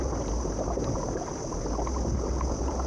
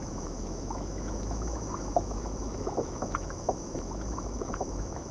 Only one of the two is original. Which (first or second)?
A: first